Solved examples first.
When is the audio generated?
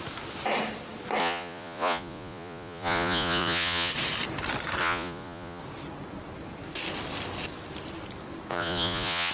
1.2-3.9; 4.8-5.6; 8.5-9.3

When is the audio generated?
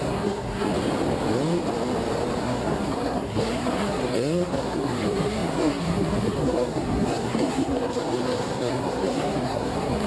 0.0-0.7; 2.4-10.1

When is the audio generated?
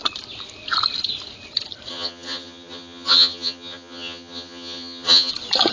1.9-5.3